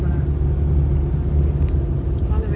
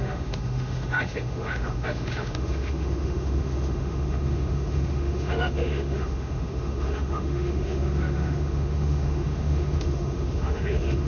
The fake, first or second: second